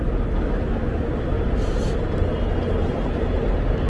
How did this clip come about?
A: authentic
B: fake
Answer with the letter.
A